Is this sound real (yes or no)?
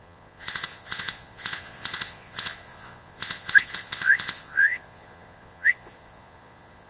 no